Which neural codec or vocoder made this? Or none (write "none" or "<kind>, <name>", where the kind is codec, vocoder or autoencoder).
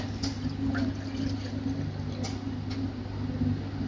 none